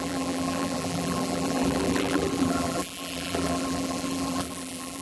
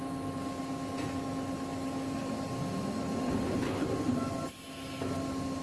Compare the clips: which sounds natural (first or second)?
second